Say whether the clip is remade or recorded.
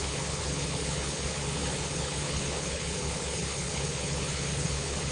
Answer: remade